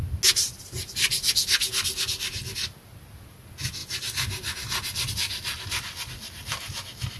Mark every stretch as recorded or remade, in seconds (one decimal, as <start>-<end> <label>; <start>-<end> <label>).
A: 0.0-7.2 recorded